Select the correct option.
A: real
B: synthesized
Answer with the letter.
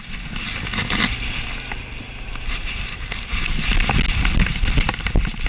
A